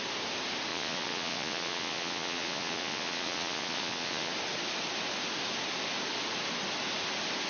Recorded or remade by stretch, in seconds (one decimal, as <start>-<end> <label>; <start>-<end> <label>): 0.0-0.7 recorded; 0.7-4.3 remade; 4.3-7.5 recorded